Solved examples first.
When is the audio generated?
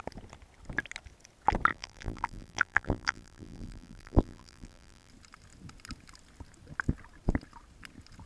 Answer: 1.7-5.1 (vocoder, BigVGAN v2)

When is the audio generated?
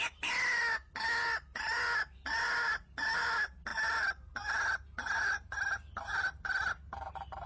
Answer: none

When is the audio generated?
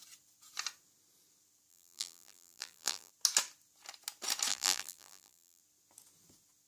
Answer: 1.7-3.1 (vocoder, BigVGAN v2); 4.5-5.6